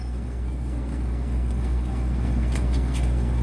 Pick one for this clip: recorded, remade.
remade